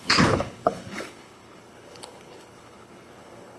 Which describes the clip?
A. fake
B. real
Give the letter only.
A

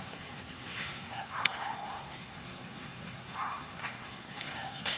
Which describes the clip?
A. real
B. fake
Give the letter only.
B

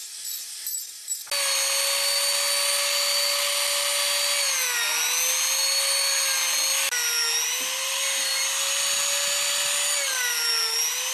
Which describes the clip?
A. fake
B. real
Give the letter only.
B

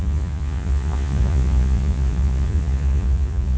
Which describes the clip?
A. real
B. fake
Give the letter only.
B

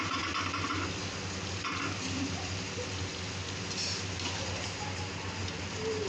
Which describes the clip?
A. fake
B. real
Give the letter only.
B